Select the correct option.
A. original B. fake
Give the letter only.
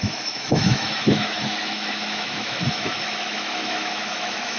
B